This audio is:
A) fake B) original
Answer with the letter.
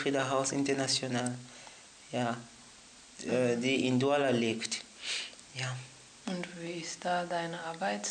B